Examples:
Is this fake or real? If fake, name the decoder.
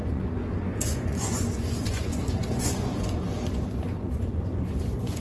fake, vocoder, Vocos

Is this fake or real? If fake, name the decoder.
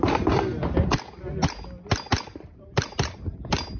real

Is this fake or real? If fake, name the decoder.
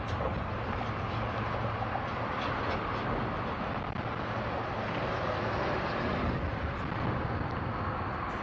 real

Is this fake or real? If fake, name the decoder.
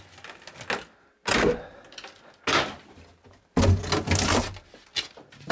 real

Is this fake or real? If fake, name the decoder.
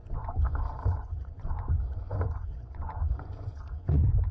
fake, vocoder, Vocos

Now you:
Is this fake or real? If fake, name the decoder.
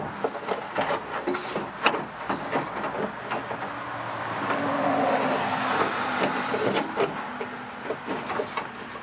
real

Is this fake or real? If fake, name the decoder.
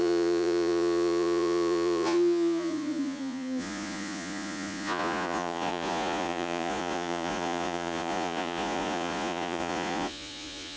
fake, vocoder, Vocos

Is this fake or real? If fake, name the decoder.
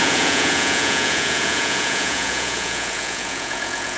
fake, vocoder, Vocos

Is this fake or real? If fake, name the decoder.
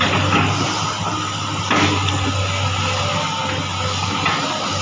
real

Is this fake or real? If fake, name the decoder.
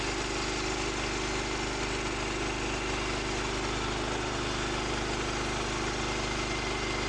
real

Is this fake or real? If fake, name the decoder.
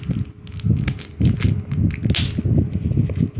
real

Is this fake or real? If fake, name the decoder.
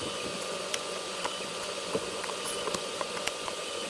fake, vocoder, Vocos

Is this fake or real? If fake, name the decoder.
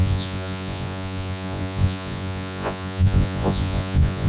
fake, vocoder, Vocos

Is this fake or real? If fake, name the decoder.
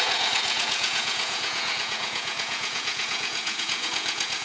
fake, vocoder, Vocos